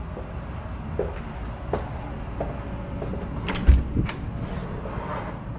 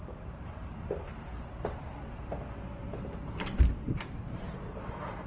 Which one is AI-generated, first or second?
second